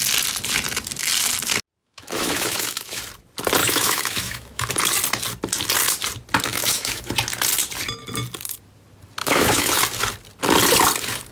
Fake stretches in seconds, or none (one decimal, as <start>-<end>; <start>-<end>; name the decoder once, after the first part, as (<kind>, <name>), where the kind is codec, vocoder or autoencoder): 1.8-3.0 (autoencoder, DAC-VAE); 3.6-4.7; 6.5-7.1; 9.2-9.8